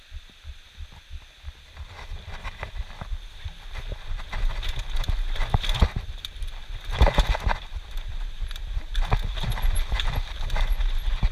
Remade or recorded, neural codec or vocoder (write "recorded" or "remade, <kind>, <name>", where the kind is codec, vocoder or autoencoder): recorded